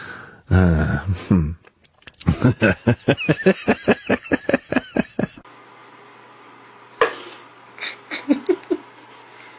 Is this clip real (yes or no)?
yes